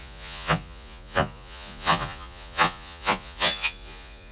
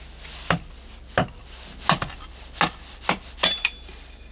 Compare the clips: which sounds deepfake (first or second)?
first